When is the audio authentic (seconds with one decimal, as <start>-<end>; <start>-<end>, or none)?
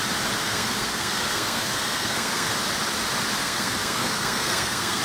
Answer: 0.0-0.4; 2.5-3.4